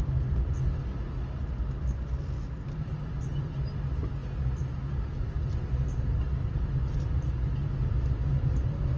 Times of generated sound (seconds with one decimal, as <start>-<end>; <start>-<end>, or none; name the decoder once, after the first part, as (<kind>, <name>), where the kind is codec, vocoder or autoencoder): none